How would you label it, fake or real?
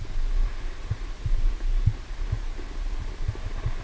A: real